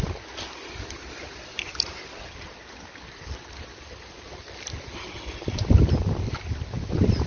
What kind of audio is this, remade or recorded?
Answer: recorded